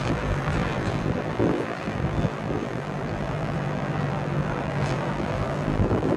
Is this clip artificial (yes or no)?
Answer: yes